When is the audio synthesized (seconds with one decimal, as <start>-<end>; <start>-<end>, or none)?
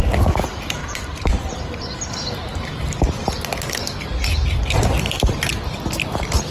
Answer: 0.8-2.1; 4.3-4.9